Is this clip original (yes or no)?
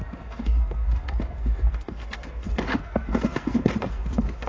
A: no